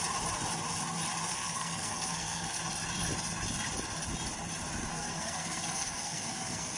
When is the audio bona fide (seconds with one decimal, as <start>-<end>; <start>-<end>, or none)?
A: 0.0-1.3; 2.6-4.9